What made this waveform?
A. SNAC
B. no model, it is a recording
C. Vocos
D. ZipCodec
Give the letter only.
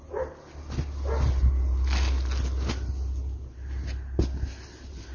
B